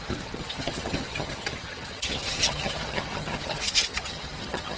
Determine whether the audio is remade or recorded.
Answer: remade